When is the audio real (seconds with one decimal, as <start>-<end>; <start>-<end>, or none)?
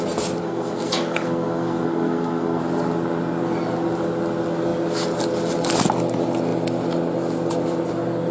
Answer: 0.0-0.4; 2.6-8.3